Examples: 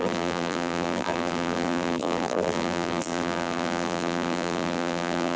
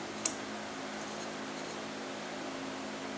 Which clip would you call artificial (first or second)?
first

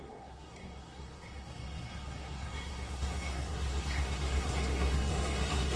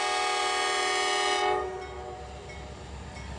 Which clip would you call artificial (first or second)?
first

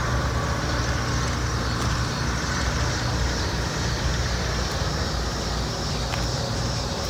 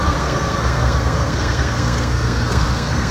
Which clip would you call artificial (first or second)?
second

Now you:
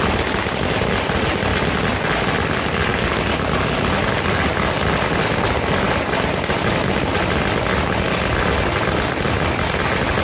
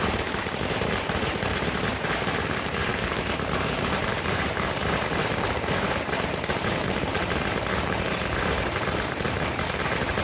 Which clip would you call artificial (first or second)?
second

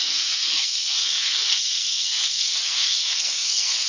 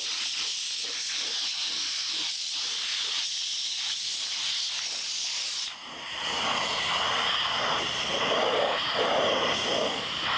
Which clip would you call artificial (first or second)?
first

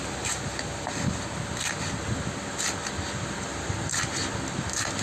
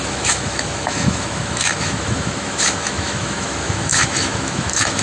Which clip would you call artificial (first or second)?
second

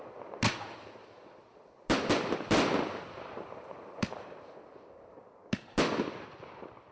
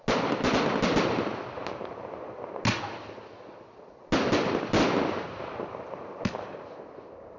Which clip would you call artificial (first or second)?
first